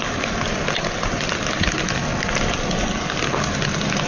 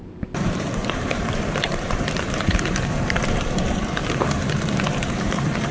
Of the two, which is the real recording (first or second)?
first